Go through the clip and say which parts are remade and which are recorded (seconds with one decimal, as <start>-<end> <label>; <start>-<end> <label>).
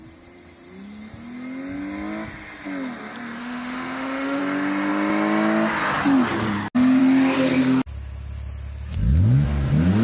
0.0-3.4 recorded; 3.4-4.4 remade; 4.4-10.0 recorded